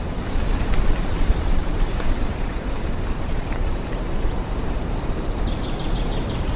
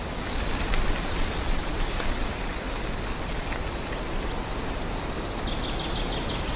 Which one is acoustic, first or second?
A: second